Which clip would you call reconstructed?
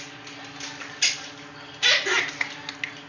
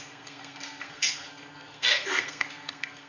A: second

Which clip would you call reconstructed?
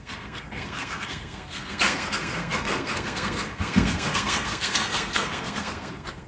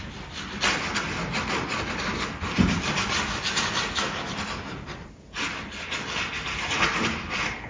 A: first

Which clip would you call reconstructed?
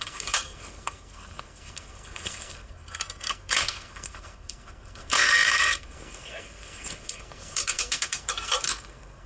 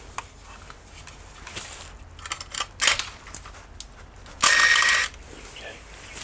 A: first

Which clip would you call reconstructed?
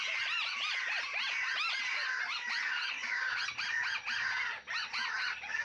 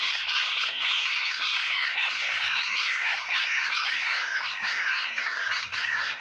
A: second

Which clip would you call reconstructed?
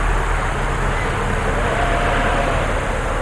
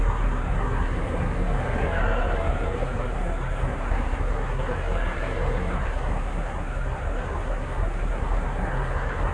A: second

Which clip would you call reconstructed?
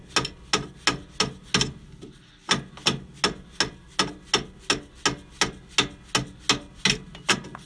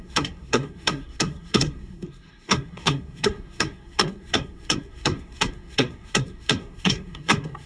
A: second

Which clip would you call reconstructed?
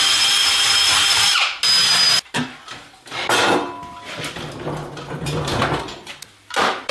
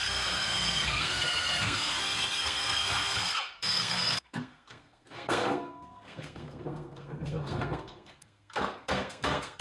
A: second